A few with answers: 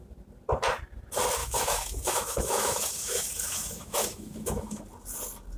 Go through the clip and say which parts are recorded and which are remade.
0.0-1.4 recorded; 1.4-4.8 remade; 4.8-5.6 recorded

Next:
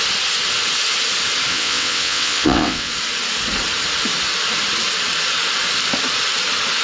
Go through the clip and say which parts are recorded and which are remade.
0.0-1.5 recorded; 1.5-2.9 remade; 2.9-6.8 recorded

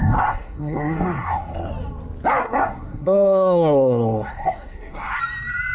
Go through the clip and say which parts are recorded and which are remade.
0.0-1.7 remade; 1.7-2.4 recorded; 2.4-5.2 remade; 5.2-5.7 recorded

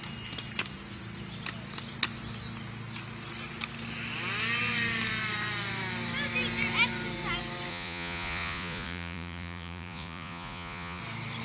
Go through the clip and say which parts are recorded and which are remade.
0.0-7.7 recorded; 7.7-11.0 remade; 11.0-11.4 recorded